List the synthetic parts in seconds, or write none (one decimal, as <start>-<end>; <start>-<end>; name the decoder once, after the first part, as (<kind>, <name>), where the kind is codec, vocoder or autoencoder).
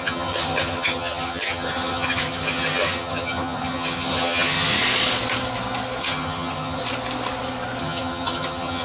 0.0-4.7 (vocoder, HiFi-GAN); 6.0-6.8; 7.8-8.8